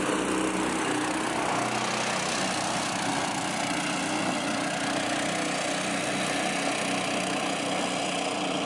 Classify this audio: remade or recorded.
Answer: recorded